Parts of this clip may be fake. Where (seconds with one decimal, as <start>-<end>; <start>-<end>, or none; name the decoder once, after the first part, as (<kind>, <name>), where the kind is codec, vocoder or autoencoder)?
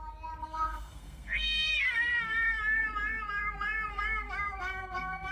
0.4-2.6 (codec, SNAC); 3.9-5.3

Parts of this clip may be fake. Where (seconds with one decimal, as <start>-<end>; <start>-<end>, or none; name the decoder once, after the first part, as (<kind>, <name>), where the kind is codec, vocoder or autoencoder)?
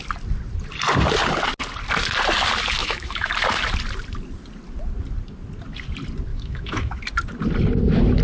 2.8-3.3 (autoencoder, DAC-VAE); 6.3-7.0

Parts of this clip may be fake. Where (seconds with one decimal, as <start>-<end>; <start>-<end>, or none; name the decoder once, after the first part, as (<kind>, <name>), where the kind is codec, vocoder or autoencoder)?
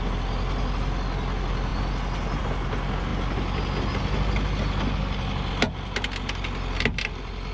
none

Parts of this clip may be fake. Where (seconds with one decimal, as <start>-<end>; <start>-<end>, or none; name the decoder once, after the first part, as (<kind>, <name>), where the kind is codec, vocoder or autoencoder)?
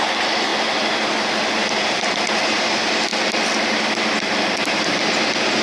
none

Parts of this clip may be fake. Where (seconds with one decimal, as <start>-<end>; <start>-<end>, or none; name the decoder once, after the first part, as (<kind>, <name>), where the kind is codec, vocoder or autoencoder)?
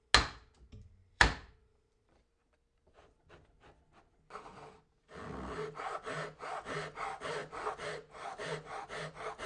1.0-3.3 (vocoder, BigVGAN v2)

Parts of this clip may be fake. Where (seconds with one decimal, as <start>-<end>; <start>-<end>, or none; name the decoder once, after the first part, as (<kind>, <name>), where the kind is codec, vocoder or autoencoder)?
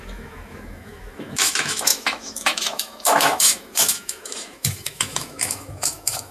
0.0-6.3 (autoencoder, DAC-VAE)